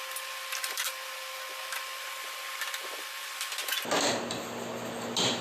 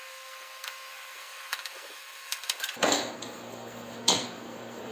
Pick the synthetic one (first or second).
second